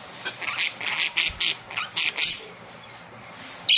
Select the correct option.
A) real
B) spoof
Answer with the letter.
A